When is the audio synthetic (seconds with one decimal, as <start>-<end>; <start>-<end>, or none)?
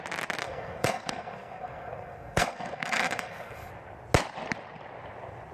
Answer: 0.4-3.7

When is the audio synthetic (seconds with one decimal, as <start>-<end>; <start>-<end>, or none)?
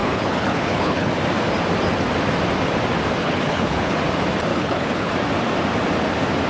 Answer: 0.0-1.1; 3.2-4.0; 4.5-5.1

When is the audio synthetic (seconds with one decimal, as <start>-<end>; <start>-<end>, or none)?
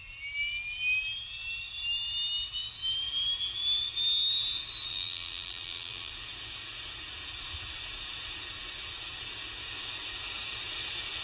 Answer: 4.9-6.1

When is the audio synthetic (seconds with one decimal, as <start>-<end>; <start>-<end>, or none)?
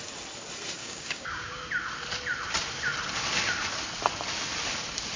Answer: 0.8-1.7